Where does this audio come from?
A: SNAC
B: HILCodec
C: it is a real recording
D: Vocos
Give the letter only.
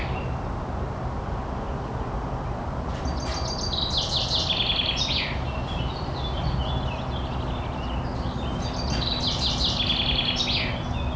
C